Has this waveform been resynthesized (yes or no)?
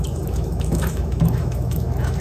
yes